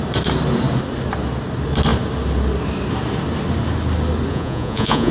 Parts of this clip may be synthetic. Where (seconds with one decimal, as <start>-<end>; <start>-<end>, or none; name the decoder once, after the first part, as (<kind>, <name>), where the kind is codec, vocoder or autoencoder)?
4.3-5.1 (vocoder, Vocos)